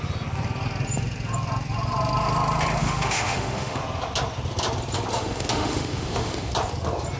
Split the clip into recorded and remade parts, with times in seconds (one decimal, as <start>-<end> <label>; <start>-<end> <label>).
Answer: 0.0-2.8 recorded; 2.8-3.8 remade; 3.8-5.1 recorded; 5.1-6.5 remade; 6.5-7.2 recorded